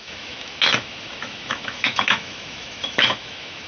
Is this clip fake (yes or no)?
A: yes